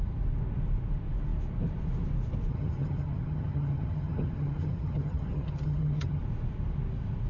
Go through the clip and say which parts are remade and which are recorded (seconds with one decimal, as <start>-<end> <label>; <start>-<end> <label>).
0.0-2.5 recorded; 2.5-6.2 remade; 6.2-7.3 recorded